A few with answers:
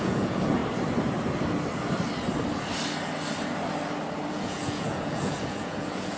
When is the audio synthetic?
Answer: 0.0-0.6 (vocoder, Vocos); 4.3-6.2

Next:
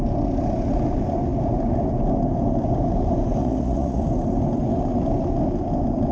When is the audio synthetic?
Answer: 3.4-4.0 (vocoder, Vocos)

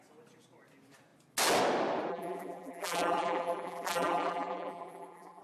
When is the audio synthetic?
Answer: 2.1-5.4 (vocoder, BigVGAN v2)

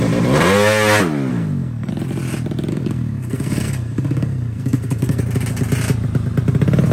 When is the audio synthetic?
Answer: 1.3-1.9 (codec, SNAC); 2.7-5.2